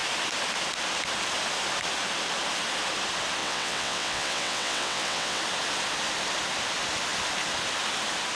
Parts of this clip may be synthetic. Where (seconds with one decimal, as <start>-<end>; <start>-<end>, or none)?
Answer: 3.4-5.4